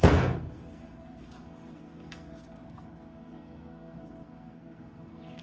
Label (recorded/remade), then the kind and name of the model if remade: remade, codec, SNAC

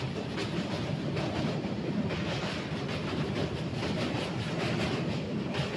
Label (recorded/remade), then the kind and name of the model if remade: remade, vocoder, BigVGAN v2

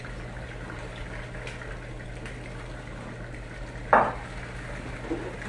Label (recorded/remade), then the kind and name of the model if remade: recorded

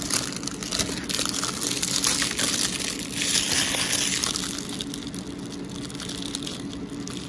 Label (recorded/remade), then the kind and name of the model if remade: recorded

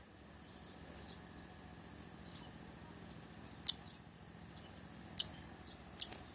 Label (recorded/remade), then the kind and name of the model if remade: recorded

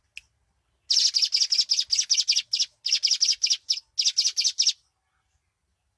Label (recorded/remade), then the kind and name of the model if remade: recorded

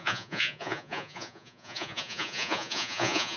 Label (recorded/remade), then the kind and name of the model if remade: remade, vocoder, Vocos